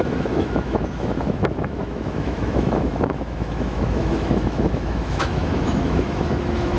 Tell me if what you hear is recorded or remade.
remade